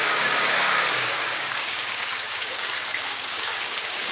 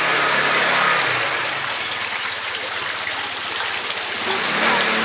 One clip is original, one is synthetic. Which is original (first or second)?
second